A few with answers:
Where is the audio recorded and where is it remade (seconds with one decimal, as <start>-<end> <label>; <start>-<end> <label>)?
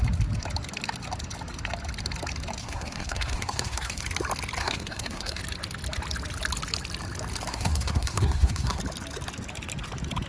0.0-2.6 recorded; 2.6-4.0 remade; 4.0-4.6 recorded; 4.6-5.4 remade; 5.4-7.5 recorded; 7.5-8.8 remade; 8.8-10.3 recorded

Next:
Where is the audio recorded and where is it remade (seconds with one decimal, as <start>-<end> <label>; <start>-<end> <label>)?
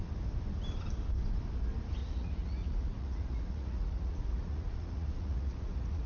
0.0-2.0 recorded; 2.0-6.1 remade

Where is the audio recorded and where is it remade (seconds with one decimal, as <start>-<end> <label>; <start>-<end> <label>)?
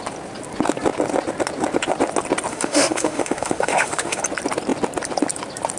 0.0-2.5 recorded; 2.5-4.2 remade; 4.2-5.8 recorded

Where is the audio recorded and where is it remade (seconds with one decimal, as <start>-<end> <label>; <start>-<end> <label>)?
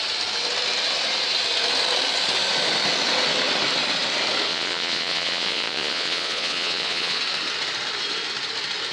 0.0-4.5 recorded; 4.5-7.2 remade; 7.2-8.9 recorded